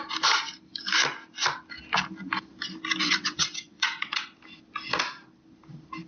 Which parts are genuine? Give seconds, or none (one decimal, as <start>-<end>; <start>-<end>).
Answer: 0.0-3.0; 4.3-6.1